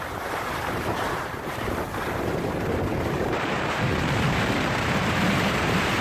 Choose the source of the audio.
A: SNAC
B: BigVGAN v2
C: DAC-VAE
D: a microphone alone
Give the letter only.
B